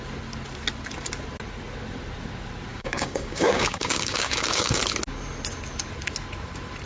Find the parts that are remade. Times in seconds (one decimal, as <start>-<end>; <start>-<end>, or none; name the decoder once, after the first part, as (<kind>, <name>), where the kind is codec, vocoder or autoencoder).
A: 2.7-4.8 (codec, DAC)